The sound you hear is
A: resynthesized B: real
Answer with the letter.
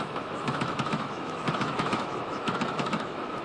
A